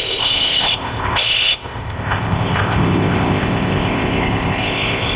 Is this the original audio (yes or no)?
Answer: no